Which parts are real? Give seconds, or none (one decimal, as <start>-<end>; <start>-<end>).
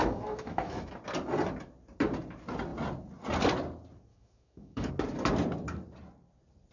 0.9-4.1; 4.9-6.7